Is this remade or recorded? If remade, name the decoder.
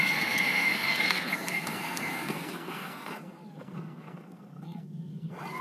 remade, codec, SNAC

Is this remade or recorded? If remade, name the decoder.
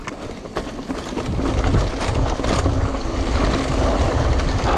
recorded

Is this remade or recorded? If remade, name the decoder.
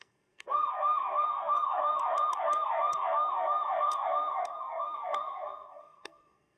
remade, codec, SNAC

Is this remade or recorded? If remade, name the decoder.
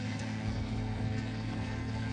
remade, codec, SNAC